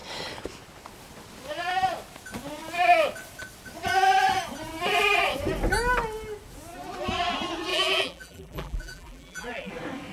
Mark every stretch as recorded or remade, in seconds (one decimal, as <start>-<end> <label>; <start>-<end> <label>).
0.0-7.7 recorded; 7.7-9.7 remade; 9.7-10.1 recorded